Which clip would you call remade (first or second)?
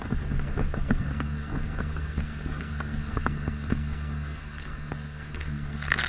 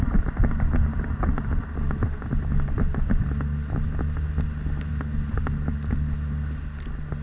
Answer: first